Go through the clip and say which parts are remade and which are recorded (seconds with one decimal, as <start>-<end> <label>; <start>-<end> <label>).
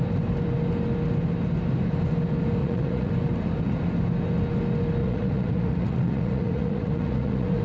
0.0-2.6 recorded; 2.6-3.1 remade; 3.1-5.0 recorded; 5.0-7.6 remade